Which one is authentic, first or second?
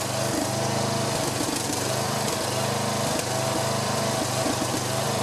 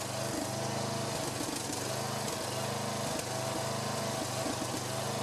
second